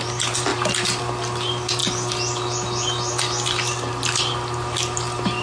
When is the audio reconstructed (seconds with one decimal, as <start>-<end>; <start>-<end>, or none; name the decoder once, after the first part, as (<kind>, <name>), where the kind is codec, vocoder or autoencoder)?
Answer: none